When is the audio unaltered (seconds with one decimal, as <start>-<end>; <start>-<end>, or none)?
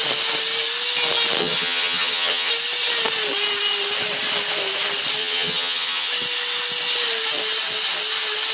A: 0.0-1.4; 2.5-5.2; 6.1-8.5